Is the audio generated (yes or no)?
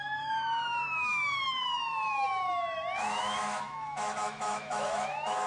yes